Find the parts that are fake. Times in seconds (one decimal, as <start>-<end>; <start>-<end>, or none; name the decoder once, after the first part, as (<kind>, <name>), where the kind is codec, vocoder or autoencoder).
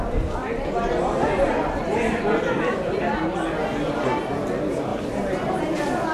1.9-3.0 (vocoder, BigVGAN v2); 4.9-5.6